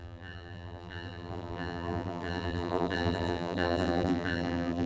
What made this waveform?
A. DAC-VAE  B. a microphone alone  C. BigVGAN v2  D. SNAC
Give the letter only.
C